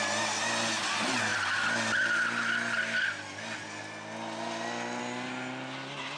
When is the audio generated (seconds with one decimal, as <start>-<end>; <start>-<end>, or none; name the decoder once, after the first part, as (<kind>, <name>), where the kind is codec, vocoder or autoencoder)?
none